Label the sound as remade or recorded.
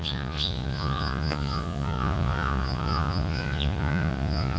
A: remade